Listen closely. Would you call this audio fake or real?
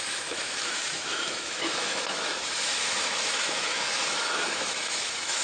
fake